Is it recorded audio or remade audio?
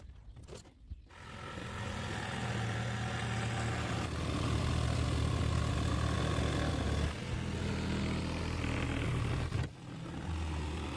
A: recorded